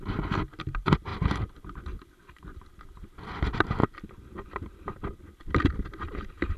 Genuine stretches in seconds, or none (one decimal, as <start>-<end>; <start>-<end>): 3.8-5.2